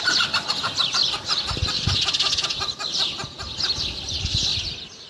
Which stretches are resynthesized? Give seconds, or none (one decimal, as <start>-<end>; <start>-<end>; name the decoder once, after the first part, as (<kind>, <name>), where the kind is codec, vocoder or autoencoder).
0.0-1.0 (vocoder, BigVGAN v2); 4.1-4.5